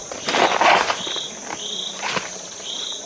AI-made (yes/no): no